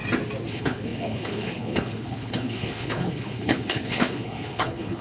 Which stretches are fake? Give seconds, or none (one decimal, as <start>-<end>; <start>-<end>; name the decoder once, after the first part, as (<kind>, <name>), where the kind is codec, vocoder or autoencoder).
0.5-5.0 (codec, HILCodec)